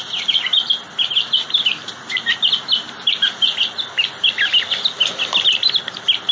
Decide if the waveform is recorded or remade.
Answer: recorded